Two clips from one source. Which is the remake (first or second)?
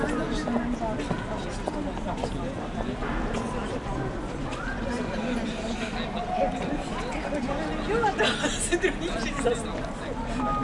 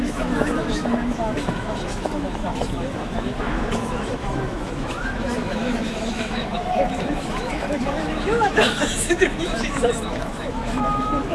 second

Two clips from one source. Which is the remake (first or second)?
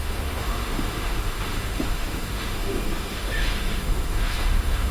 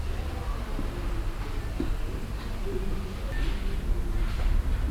first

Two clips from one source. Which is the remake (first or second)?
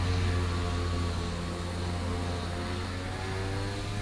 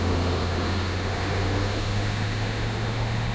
second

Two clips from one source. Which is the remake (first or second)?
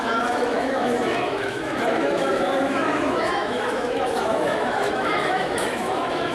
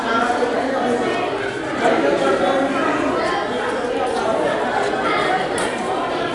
first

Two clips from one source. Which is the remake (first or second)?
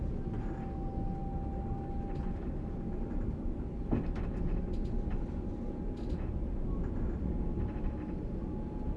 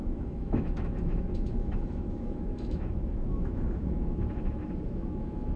second